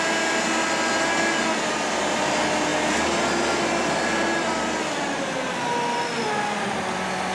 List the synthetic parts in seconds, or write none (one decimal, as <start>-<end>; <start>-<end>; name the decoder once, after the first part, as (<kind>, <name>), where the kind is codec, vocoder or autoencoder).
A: none